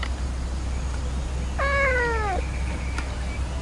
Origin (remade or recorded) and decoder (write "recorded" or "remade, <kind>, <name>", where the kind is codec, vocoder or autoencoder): recorded